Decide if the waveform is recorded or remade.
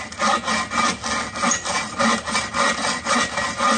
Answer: recorded